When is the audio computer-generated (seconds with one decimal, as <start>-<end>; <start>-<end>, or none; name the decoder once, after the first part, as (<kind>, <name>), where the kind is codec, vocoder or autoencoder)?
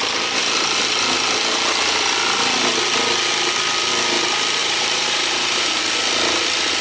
4.6-5.8 (vocoder, BigVGAN v2)